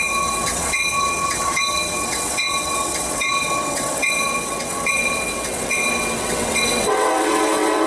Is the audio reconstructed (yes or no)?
yes